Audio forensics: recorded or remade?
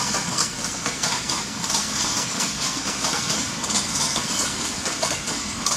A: remade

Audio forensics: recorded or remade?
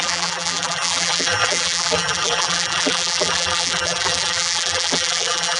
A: remade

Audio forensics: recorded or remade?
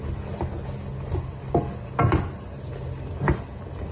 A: recorded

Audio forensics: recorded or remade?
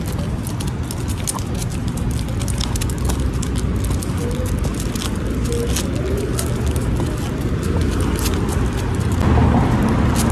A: recorded